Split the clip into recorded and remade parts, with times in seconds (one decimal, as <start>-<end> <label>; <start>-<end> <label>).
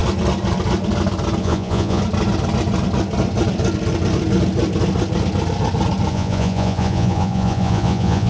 0.0-1.4 recorded; 1.4-2.0 remade; 2.0-6.1 recorded; 6.1-8.3 remade